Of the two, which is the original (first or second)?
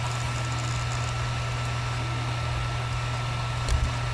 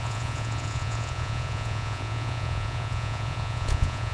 first